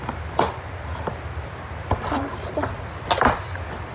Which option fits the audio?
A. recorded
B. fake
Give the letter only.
A